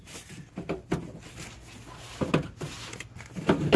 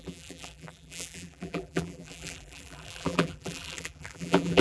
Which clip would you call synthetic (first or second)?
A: second